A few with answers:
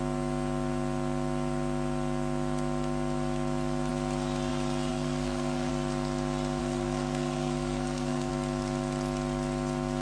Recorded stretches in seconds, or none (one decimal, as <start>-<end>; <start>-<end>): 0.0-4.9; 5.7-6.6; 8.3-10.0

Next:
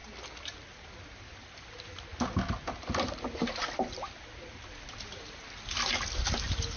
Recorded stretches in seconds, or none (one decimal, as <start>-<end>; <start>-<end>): 0.0-6.8

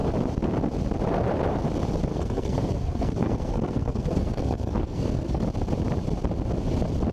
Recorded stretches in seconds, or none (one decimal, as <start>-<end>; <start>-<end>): 0.0-2.1; 5.4-7.1